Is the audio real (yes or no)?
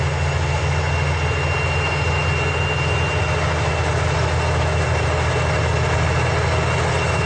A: yes